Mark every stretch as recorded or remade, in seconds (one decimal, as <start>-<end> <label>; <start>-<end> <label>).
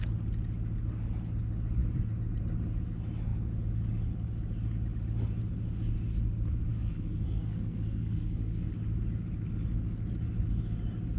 0.0-6.7 recorded; 6.7-8.7 remade; 8.7-11.2 recorded